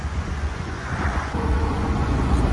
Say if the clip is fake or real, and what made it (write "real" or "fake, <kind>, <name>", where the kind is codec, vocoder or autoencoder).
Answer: fake, vocoder, Vocos